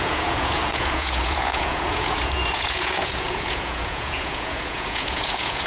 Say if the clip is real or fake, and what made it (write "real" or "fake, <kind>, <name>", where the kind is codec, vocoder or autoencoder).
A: fake, vocoder, Vocos